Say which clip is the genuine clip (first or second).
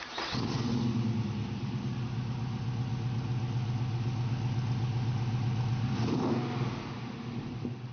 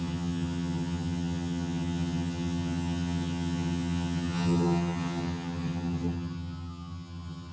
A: first